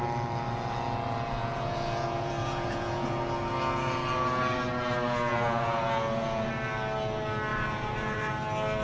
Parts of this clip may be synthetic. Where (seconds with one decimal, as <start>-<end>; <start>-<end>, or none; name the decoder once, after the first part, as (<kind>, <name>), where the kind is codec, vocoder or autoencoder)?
1.4-3.2 (vocoder, Vocos); 5.3-6.5; 7.5-8.3